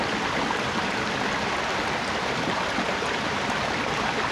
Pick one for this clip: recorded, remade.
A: recorded